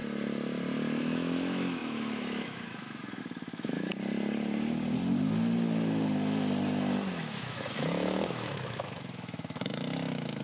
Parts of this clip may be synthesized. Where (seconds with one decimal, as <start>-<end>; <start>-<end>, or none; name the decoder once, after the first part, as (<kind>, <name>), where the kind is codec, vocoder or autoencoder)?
1.0-3.9 (autoencoder, DAC-VAE); 7.2-10.4